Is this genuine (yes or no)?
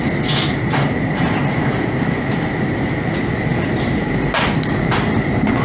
yes